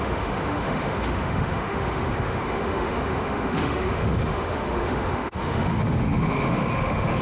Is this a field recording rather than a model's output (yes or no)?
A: no